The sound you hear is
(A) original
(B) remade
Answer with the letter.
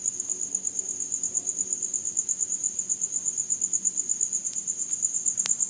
A